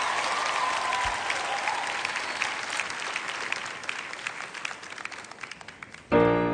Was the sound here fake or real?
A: real